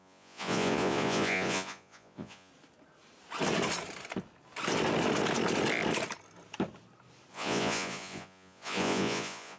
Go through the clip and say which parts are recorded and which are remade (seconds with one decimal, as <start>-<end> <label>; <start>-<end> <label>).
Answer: 0.0-2.5 remade; 2.5-7.3 recorded; 7.3-9.6 remade